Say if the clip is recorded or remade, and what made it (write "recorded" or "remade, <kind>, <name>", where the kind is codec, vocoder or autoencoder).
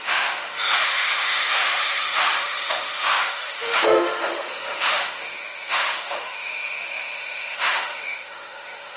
remade, autoencoder, DAC-VAE